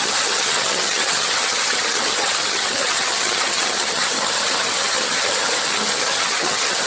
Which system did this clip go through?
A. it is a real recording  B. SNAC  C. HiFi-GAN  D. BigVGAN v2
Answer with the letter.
C